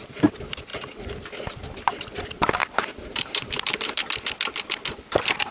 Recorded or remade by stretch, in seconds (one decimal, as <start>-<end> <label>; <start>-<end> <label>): 0.0-2.6 recorded; 2.6-4.0 remade; 4.0-5.5 recorded